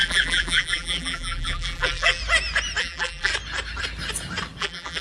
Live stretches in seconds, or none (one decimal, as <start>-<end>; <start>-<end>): 2.2-2.8; 3.3-4.6